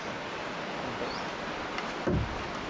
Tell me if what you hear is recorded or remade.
recorded